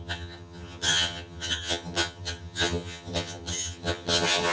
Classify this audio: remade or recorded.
remade